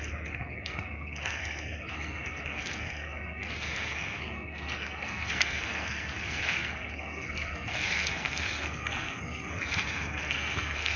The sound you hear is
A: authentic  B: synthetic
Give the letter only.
B